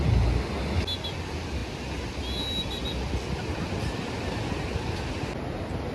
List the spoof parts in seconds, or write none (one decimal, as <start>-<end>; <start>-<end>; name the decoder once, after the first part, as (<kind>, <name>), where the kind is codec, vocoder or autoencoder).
none